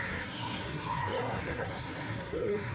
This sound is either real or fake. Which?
fake